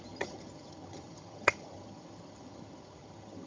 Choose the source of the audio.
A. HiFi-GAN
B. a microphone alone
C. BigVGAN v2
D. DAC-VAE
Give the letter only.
A